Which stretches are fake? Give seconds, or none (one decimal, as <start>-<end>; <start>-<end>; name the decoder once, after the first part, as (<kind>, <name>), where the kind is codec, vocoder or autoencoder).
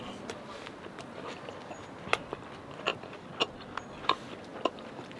none